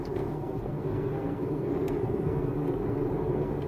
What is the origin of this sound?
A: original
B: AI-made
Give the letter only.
B